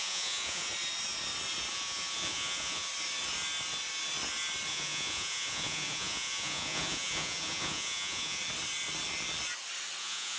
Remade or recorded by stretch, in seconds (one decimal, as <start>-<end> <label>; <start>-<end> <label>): 0.0-0.7 remade; 0.7-1.7 recorded; 1.7-2.9 remade; 2.9-4.7 recorded; 4.7-8.4 remade; 8.4-10.0 recorded; 10.0-10.4 remade

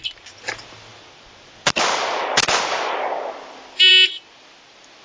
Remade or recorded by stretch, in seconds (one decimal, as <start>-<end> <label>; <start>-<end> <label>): 0.0-5.0 recorded

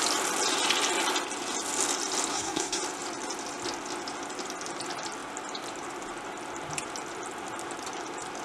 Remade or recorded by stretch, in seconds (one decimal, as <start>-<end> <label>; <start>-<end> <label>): 0.0-2.3 recorded; 2.3-2.8 remade; 2.8-8.4 recorded

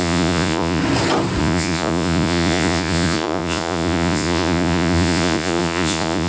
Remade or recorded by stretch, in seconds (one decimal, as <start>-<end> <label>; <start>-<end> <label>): 0.0-0.8 remade; 0.8-1.4 recorded; 1.4-6.3 remade

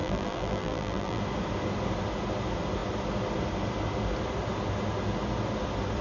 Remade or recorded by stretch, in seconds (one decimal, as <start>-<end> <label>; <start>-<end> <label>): 0.0-1.2 remade; 1.2-6.0 recorded

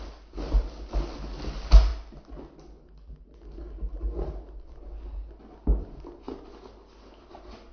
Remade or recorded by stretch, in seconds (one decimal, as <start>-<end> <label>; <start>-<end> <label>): 0.0-7.7 recorded

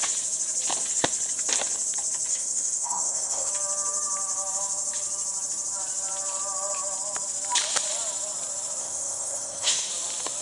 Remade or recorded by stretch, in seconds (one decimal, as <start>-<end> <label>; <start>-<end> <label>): 0.0-2.3 recorded; 2.3-3.5 remade; 3.5-8.8 recorded; 8.8-9.9 remade; 9.9-10.4 recorded